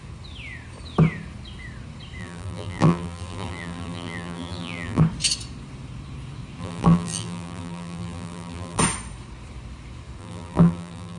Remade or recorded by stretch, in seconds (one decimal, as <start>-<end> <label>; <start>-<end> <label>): 0.0-2.2 recorded; 2.2-5.0 remade; 5.0-6.6 recorded; 6.6-8.8 remade; 8.8-10.2 recorded; 10.2-11.2 remade